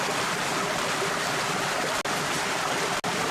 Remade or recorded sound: recorded